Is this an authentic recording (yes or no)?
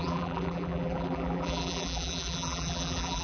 no